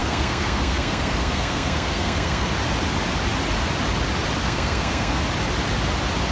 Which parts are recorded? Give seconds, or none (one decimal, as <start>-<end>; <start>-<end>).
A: 2.5-4.4; 5.2-6.3